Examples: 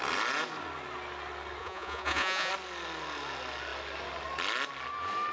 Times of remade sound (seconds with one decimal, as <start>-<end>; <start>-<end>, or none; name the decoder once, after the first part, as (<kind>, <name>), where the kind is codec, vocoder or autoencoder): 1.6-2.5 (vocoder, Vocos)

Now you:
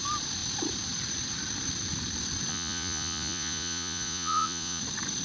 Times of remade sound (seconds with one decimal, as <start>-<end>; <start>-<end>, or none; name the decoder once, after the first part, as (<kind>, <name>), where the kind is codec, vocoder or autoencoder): 2.5-4.8 (vocoder, Vocos)

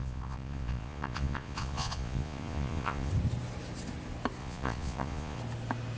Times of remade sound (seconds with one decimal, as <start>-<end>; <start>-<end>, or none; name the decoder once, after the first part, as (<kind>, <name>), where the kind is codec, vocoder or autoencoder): 0.0-3.1 (vocoder, Vocos); 4.4-5.4

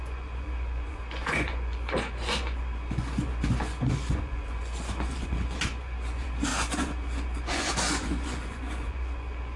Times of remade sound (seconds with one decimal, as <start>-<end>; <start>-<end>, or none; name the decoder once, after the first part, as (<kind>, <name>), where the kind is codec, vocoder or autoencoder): 0.0-9.6 (vocoder, Vocos)

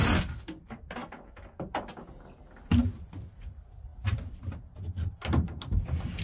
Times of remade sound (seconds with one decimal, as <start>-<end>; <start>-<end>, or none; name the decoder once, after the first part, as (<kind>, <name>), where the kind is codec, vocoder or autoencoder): none

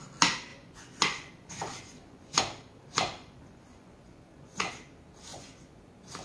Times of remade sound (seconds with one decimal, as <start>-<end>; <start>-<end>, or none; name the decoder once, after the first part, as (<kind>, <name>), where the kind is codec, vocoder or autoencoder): 0.5-2.4 (vocoder, Vocos); 3.2-4.7; 5.3-5.8